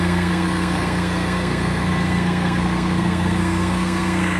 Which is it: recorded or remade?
remade